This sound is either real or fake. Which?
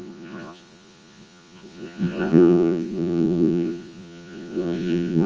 fake